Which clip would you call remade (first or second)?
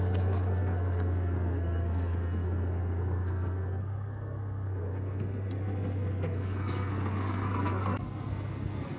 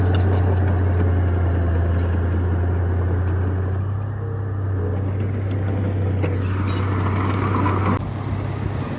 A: first